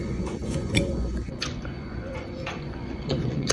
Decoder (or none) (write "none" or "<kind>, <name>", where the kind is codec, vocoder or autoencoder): vocoder, Vocos